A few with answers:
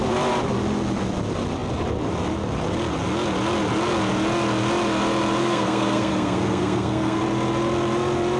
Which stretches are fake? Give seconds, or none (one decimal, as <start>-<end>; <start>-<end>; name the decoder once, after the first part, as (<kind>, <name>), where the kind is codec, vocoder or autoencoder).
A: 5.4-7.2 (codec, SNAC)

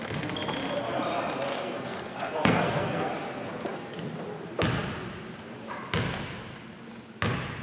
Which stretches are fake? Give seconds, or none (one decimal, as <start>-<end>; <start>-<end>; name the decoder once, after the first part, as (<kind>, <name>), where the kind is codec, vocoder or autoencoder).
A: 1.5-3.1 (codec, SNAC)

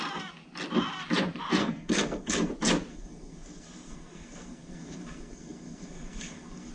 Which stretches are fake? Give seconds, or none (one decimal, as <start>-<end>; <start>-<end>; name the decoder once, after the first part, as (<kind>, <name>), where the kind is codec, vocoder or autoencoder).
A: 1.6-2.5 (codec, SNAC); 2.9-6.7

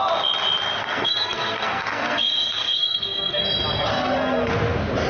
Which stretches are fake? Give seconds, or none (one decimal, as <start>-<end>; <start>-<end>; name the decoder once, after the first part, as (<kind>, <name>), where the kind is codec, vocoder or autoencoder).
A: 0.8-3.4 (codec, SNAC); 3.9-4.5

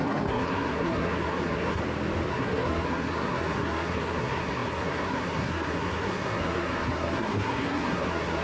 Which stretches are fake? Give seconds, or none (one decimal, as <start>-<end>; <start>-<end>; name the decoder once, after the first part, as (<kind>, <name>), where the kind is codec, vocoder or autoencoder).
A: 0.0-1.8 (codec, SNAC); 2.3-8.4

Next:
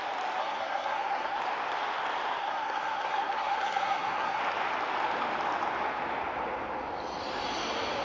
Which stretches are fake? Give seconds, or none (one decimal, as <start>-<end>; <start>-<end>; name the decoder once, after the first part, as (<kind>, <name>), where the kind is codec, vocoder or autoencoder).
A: 0.4-1.4 (codec, SNAC); 2.4-4.4

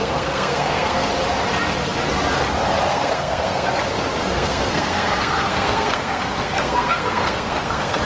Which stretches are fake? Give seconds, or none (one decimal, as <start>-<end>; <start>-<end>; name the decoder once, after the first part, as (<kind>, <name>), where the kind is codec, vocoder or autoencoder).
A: 0.0-1.1 (codec, SNAC); 2.9-3.7; 4.2-8.0